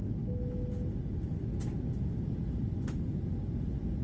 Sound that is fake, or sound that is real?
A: real